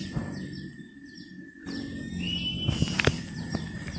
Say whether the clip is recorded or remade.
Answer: recorded